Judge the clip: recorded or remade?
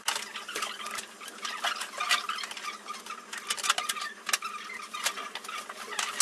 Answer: recorded